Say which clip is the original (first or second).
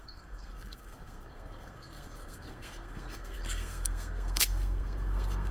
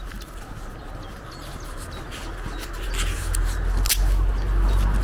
second